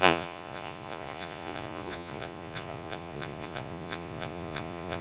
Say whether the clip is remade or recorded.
remade